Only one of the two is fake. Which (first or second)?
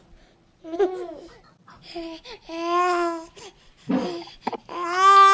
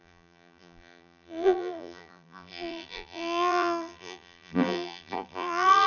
second